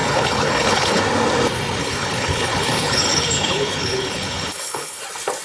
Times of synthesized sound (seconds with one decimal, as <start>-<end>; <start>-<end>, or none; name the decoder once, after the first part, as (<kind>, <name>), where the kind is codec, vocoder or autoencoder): 0.0-1.0 (codec, HILCodec); 1.8-5.0